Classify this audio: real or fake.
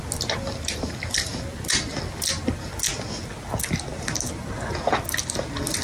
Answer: real